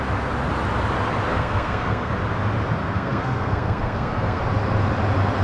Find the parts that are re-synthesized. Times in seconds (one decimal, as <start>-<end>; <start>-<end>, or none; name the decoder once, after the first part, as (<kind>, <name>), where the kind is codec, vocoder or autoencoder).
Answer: 1.3-2.1 (codec, SNAC); 2.8-4.4